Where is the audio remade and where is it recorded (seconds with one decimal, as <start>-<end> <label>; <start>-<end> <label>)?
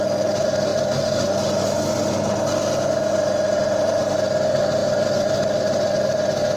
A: 0.0-6.6 recorded